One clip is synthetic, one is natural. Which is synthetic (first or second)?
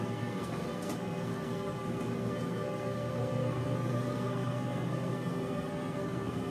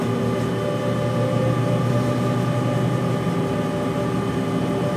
first